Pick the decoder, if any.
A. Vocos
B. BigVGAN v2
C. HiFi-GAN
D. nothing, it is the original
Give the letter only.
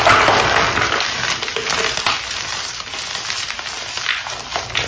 D